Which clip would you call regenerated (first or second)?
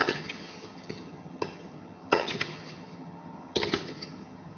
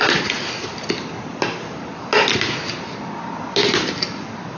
first